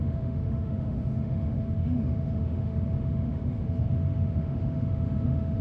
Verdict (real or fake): fake